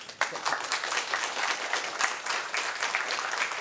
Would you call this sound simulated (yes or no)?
no